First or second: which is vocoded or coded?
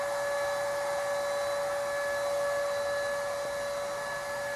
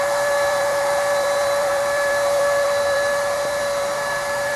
second